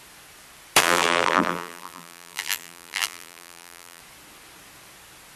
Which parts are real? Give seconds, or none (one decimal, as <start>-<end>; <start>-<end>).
0.0-0.8; 4.0-5.4